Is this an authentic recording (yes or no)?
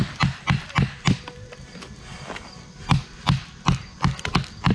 yes